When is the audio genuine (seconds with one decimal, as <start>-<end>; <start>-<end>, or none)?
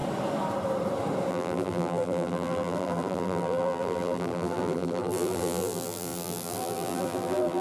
0.0-1.3